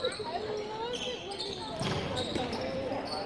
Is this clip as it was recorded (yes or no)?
yes